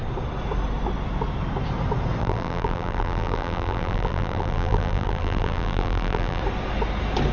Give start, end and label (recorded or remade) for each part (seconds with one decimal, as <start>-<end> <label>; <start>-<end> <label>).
0.0-2.2 recorded; 2.2-6.4 remade; 6.4-7.3 recorded